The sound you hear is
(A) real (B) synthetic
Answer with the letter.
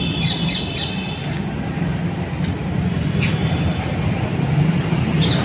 A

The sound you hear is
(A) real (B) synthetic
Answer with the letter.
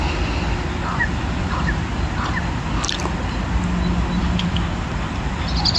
A